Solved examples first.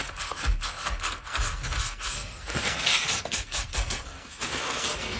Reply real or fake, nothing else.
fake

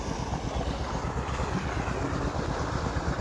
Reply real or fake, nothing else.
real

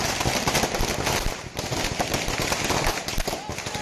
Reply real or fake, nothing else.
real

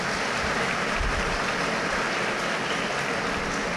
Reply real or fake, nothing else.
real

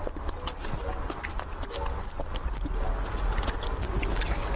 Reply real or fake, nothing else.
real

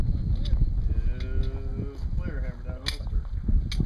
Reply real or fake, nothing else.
real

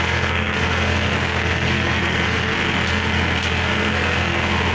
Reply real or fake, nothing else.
fake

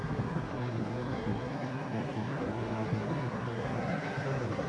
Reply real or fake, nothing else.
fake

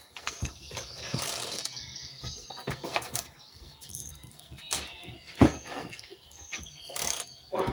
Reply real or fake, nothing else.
fake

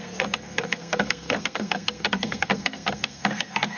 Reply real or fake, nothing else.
fake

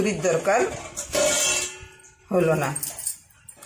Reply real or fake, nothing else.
real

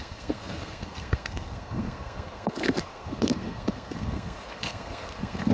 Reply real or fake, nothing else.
fake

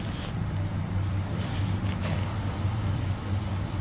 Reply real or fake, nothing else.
real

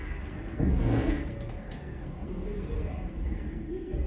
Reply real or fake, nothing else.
fake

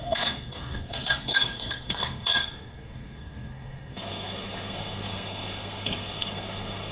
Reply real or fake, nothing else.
fake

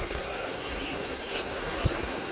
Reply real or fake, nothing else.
fake